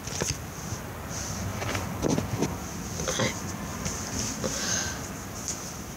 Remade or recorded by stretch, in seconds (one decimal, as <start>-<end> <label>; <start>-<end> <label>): 0.0-6.0 recorded